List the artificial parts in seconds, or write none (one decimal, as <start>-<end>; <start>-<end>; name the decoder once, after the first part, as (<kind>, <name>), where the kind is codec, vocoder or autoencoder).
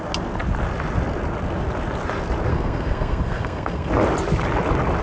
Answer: 2.5-3.9 (codec, SNAC)